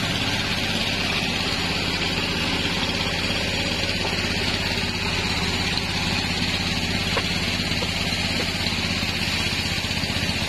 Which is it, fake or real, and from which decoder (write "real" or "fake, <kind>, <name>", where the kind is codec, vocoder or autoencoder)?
real